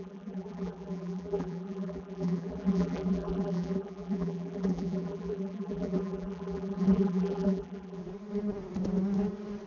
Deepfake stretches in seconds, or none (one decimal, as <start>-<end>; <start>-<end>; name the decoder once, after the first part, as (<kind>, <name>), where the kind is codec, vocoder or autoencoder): 0.0-8.0 (vocoder, BigVGAN v2)